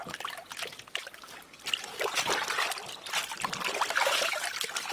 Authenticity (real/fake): real